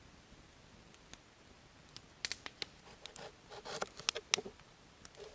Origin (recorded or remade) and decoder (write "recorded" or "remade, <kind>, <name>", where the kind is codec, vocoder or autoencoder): recorded